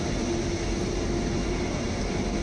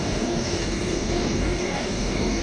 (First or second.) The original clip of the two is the first